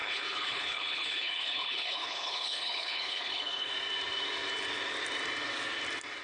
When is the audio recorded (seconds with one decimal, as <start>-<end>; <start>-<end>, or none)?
3.7-6.2